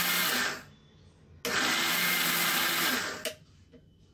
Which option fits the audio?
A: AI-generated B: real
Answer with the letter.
B